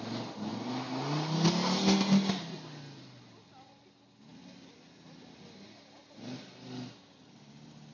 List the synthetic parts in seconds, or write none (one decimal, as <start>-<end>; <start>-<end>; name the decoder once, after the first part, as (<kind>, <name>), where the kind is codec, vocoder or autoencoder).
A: none